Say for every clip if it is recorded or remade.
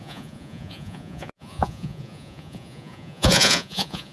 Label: remade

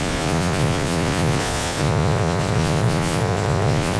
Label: remade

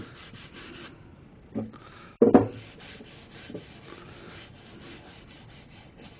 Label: recorded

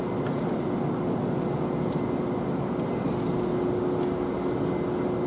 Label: recorded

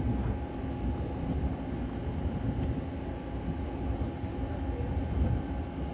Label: recorded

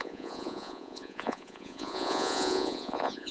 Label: remade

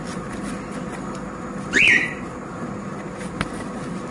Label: recorded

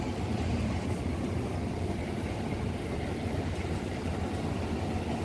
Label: recorded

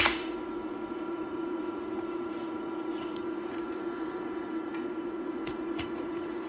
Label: remade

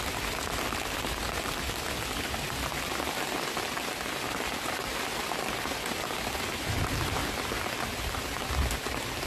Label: recorded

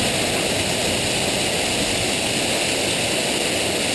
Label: recorded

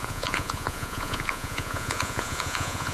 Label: remade